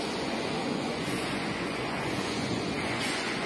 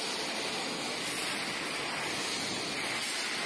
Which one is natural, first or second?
second